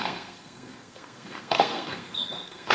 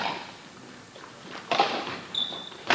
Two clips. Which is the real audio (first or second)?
second